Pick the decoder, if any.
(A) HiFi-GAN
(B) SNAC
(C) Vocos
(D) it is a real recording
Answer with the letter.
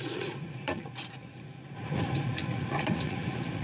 C